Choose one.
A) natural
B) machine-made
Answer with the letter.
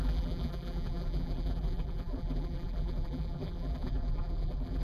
B